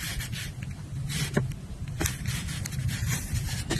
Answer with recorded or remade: recorded